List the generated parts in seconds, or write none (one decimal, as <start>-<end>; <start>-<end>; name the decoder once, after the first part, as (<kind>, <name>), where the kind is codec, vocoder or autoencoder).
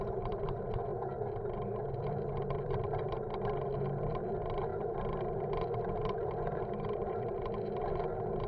0.9-3.2 (vocoder, BigVGAN v2); 4.7-7.9